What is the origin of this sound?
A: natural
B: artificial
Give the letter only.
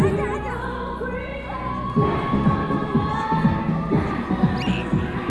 A